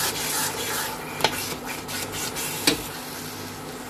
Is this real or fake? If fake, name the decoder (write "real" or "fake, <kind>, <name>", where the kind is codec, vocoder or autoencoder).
real